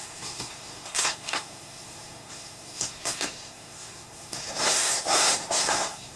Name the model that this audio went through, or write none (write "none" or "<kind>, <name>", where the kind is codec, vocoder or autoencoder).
codec, SNAC